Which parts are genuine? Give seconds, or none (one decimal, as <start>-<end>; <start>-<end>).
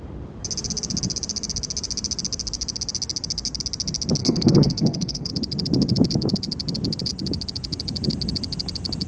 0.0-4.2; 5.3-9.1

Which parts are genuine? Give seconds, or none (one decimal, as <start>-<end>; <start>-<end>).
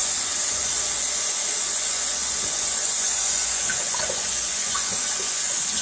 none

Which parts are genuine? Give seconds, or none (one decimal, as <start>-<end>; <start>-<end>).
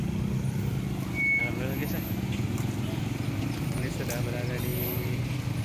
0.0-5.6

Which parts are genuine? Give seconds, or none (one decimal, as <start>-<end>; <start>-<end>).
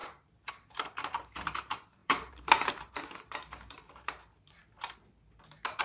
4.6-5.8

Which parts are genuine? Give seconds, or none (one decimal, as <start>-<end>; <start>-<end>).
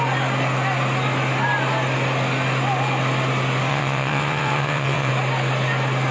0.0-3.7; 5.1-6.1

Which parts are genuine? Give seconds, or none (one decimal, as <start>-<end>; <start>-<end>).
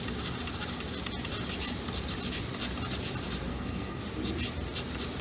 0.0-3.5; 4.0-5.2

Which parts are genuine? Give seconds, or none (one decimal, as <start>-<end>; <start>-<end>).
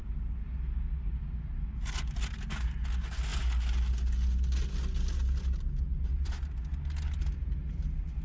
0.0-8.2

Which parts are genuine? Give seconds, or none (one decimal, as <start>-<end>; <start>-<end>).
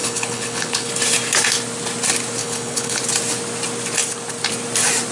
0.9-2.4; 3.0-5.1